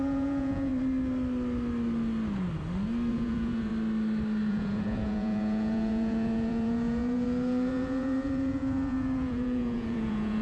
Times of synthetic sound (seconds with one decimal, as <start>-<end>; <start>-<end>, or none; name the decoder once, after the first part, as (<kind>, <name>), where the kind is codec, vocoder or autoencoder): 0.0-0.7 (vocoder, Vocos); 3.1-3.7; 4.5-10.4